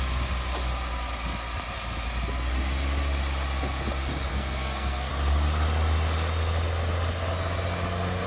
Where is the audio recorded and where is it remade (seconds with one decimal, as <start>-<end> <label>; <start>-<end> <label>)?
0.0-4.3 recorded; 4.3-5.1 remade; 5.1-8.3 recorded